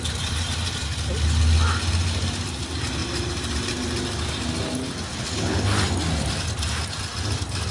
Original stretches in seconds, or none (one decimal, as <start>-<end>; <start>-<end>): 0.0-5.1; 5.6-7.7